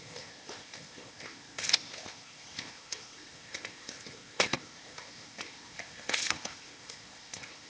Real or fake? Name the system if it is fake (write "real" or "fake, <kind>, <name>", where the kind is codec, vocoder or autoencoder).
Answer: fake, codec, ZipCodec